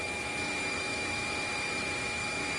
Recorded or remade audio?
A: remade